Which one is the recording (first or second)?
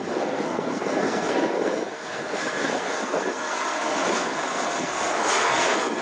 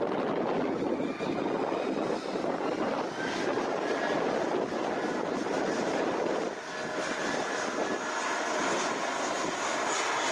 second